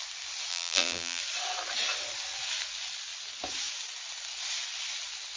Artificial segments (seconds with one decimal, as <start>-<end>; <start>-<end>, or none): 0.5-1.2